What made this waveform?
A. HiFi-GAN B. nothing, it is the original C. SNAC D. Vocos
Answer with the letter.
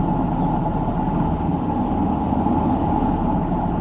B